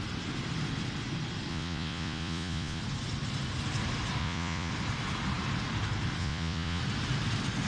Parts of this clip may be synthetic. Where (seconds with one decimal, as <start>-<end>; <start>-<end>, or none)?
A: 1.5-2.8; 4.2-4.7; 6.2-6.8